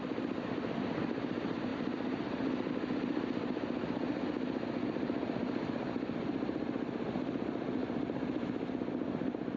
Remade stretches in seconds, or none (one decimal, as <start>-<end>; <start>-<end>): none